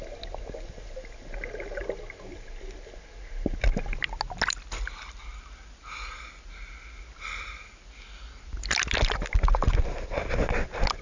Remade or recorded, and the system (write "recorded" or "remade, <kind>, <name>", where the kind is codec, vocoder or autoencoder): recorded